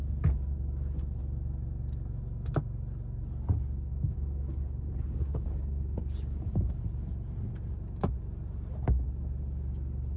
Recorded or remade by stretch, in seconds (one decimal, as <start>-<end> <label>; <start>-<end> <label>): 0.0-3.9 recorded; 3.9-6.8 remade; 6.8-10.2 recorded